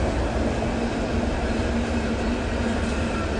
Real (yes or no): yes